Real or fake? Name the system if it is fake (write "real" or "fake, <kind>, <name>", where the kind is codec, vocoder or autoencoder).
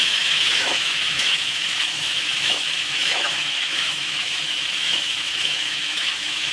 fake, autoencoder, DAC-VAE